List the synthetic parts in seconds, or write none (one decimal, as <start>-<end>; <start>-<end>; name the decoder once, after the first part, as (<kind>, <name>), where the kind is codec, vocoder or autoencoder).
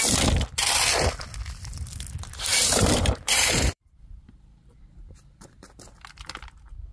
2.5-4.8 (vocoder, BigVGAN v2)